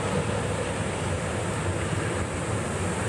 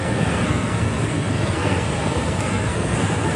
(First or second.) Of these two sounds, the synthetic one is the second